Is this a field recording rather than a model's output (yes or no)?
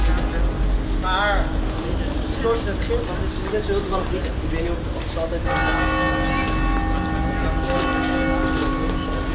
yes